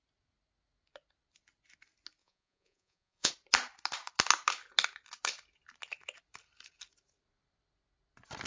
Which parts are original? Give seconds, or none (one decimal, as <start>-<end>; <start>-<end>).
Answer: 0.0-2.2; 3.3-8.5